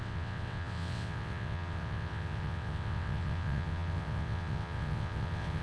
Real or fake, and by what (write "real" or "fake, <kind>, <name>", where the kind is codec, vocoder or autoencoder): fake, vocoder, WaveNeXt